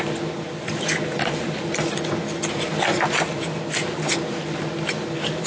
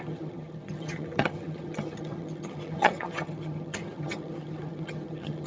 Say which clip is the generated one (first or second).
second